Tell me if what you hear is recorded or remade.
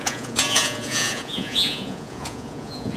remade